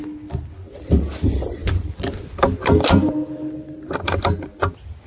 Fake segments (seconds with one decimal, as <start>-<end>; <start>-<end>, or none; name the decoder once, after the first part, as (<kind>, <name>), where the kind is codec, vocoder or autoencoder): 1.6-3.9 (vocoder, BigVGAN v2)

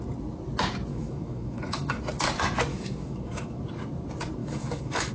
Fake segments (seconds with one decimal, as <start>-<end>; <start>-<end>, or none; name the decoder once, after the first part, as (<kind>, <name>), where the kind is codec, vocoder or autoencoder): 0.9-2.0 (autoencoder, DAC-VAE); 2.7-3.6; 4.4-5.1

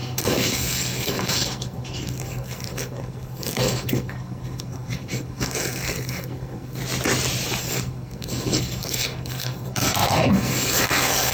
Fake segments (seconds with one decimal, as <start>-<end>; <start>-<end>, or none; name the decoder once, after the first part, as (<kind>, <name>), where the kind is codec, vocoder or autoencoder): 0.0-6.8 (codec, SNAC); 7.6-11.3

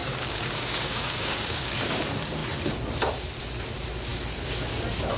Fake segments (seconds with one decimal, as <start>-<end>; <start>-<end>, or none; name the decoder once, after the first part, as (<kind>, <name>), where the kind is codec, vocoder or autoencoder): 0.0-2.0 (codec, DAC)

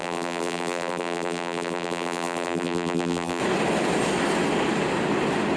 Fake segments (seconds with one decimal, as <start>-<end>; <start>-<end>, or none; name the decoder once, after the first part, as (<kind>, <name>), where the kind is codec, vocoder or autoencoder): 0.0-3.4 (vocoder, BigVGAN v2)

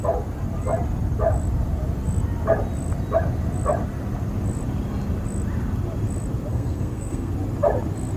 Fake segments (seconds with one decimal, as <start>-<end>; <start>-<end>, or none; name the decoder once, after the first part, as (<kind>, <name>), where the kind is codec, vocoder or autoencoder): 6.5-7.3 (codec, SNAC)